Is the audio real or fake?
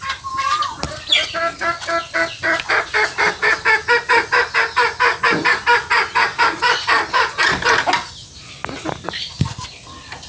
real